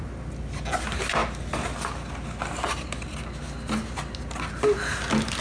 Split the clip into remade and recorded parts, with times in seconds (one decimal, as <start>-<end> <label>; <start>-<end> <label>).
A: 0.0-5.4 recorded